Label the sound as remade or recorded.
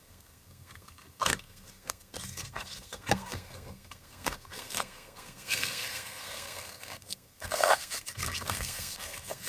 remade